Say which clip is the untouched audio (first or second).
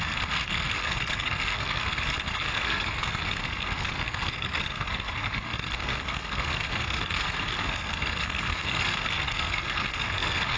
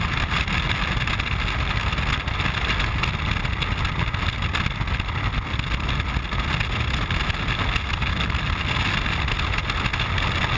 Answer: second